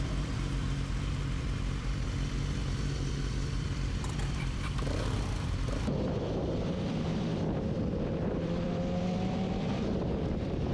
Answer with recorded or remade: remade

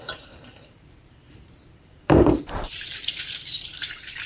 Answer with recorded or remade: remade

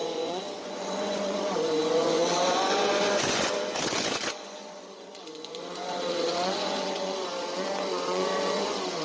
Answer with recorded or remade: remade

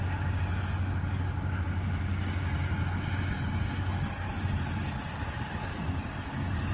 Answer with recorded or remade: recorded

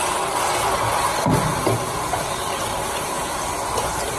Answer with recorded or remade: recorded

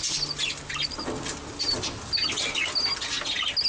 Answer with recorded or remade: recorded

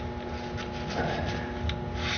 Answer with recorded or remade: recorded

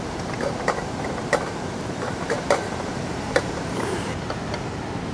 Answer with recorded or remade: remade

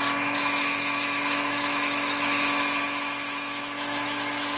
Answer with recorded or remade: remade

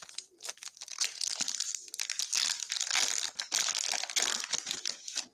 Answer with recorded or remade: recorded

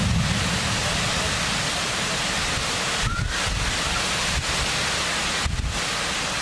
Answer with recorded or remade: recorded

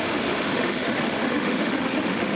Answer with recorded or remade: remade